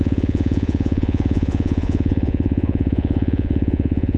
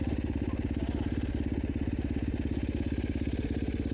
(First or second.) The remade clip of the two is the first